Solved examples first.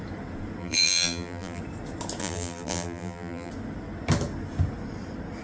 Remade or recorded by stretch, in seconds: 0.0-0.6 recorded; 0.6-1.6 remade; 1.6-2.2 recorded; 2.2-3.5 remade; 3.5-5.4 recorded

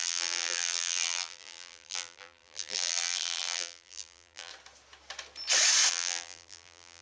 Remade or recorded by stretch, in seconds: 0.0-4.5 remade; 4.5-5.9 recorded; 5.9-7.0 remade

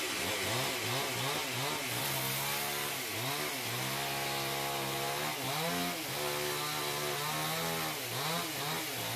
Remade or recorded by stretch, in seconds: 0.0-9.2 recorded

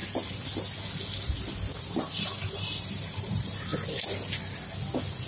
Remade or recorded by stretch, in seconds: 0.0-1.8 recorded; 1.8-3.7 remade; 3.7-5.3 recorded

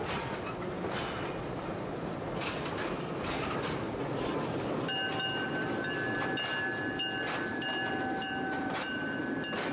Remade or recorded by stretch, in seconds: 0.0-7.5 recorded; 7.5-9.2 remade; 9.2-9.7 recorded

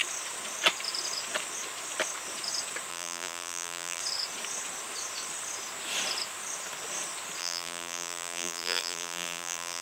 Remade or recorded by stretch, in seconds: 0.0-2.9 recorded; 2.9-4.0 remade; 4.0-7.4 recorded; 7.4-9.8 remade

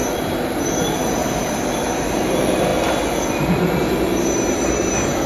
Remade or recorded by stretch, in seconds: 0.0-5.3 remade